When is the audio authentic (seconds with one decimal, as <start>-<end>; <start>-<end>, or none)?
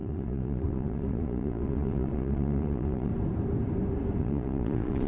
3.1-4.2